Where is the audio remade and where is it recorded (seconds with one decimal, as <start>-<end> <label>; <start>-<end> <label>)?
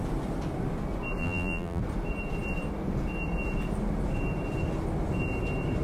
0.0-1.2 recorded; 1.2-1.8 remade; 1.8-5.8 recorded